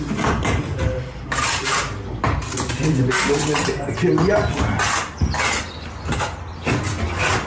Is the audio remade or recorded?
recorded